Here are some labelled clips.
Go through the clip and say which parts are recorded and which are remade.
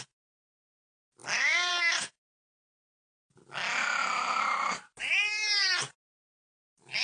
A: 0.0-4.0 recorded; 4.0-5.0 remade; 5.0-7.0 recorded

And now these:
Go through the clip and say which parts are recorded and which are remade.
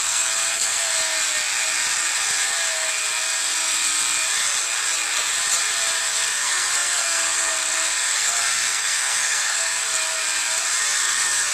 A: 0.0-0.9 remade; 0.9-6.0 recorded; 6.0-9.8 remade; 9.8-11.0 recorded; 11.0-11.5 remade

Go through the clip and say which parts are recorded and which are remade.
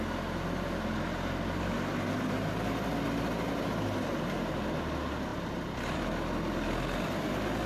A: 0.0-7.7 recorded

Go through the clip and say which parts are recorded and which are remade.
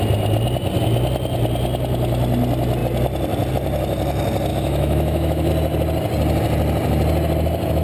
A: 0.0-4.5 recorded; 4.5-5.5 remade; 5.5-7.8 recorded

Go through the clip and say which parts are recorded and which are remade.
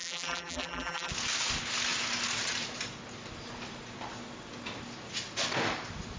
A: 0.0-1.1 remade; 1.1-6.2 recorded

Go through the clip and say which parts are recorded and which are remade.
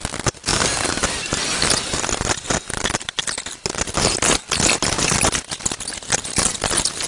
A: 0.0-7.1 recorded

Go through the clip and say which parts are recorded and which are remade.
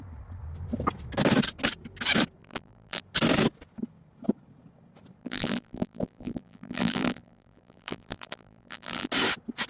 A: 0.0-2.4 recorded; 2.4-3.0 remade; 3.0-5.2 recorded; 5.2-9.1 remade; 9.1-9.7 recorded